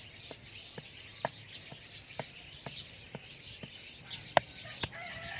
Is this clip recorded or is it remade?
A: recorded